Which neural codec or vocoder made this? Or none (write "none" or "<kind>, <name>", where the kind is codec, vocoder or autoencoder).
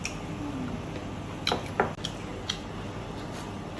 none